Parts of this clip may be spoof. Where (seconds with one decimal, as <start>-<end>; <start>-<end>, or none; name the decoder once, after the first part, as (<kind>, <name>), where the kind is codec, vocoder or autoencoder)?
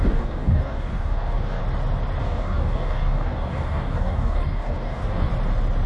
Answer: 0.0-1.6 (codec, DAC); 2.2-5.3